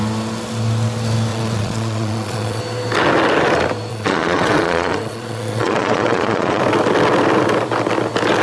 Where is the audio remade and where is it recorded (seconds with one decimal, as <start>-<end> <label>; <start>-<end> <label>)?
0.0-1.3 recorded; 1.3-2.6 remade; 2.6-3.9 recorded; 3.9-6.6 remade; 6.6-8.4 recorded